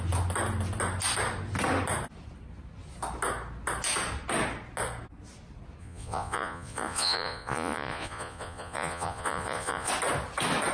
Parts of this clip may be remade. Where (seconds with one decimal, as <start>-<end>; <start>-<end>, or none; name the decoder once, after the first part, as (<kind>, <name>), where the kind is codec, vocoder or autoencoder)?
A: 5.8-9.9 (vocoder, Vocos)